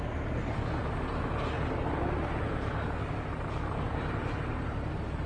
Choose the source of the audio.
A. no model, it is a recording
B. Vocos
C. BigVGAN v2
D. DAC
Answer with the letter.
A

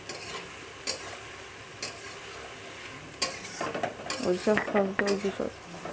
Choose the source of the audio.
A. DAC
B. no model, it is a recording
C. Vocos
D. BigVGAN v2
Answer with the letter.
B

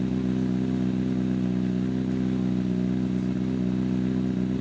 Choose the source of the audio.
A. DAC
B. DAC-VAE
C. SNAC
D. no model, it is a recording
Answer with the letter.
D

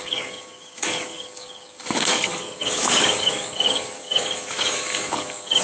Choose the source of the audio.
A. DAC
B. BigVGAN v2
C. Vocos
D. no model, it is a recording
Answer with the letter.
A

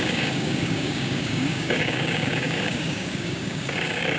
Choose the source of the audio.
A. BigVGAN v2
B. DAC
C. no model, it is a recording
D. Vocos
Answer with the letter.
B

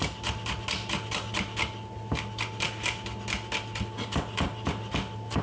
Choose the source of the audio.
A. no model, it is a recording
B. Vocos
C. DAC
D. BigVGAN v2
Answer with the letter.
A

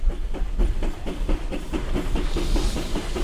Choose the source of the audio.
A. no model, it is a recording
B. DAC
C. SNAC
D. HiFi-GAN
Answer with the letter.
A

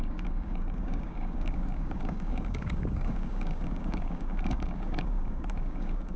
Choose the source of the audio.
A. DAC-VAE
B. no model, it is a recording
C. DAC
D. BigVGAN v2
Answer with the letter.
C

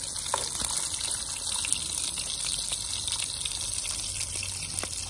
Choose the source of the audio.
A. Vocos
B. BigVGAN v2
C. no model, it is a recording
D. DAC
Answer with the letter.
C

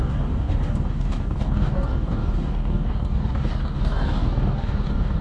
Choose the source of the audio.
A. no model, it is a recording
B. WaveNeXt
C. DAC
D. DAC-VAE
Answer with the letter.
C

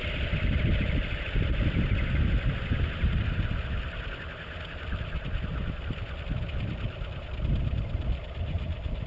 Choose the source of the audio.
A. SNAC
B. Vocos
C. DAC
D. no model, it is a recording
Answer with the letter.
D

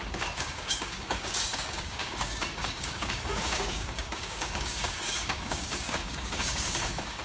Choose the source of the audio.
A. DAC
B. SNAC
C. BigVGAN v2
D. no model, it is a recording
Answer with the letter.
A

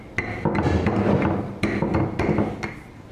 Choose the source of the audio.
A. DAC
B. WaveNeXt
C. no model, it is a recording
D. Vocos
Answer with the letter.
C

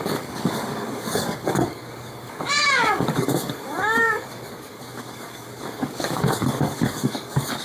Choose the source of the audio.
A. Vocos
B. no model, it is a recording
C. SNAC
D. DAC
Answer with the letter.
D